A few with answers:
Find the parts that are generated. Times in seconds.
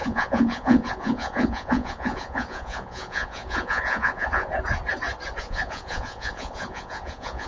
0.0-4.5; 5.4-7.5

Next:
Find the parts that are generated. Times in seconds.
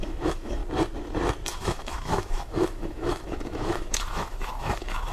0.0-0.6; 1.5-5.1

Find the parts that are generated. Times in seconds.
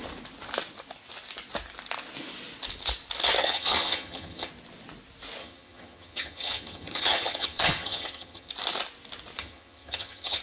3.4-4.5; 5.4-8.5; 9.4-10.4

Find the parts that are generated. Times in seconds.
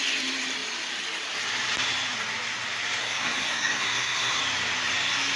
3.0-4.4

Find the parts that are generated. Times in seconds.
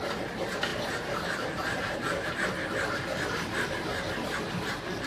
0.7-2.3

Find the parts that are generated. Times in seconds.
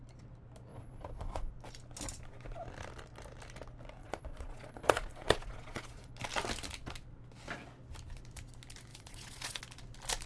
0.7-1.5; 4.0-6.1; 8.9-9.6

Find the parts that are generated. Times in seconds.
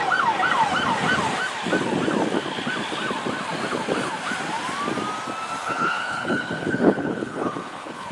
5.6-8.1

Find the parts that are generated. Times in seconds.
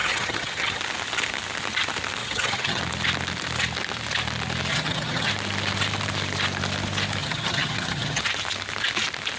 0.0-0.8; 2.2-2.8; 4.7-5.3; 7.2-8.2